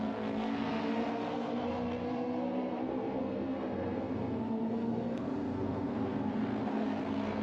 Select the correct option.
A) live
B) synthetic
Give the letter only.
B